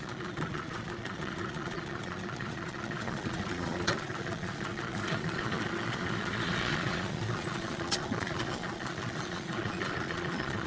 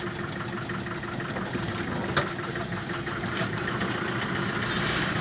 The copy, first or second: first